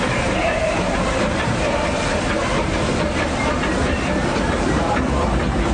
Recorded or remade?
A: remade